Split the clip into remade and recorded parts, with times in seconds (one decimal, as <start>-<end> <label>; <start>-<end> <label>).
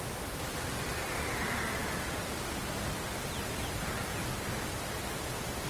0.0-4.0 remade; 4.0-5.2 recorded; 5.2-5.7 remade